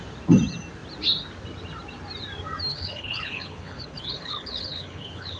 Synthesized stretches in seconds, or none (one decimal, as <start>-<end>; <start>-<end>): 2.7-5.4